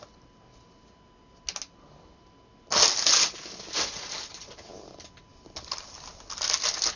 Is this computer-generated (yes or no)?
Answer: no